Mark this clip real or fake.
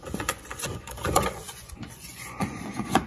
fake